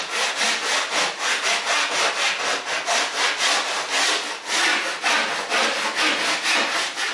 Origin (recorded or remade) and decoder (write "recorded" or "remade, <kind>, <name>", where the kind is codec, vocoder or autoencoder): recorded